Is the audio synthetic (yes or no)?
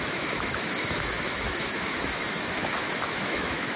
yes